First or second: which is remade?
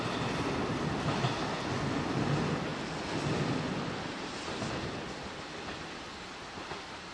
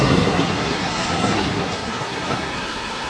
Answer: second